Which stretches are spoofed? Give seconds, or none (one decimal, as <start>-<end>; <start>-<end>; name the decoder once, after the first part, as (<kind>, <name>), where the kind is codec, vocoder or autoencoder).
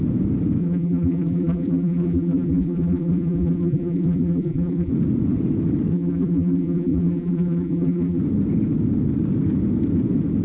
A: 0.6-4.9 (vocoder, BigVGAN v2); 5.9-8.2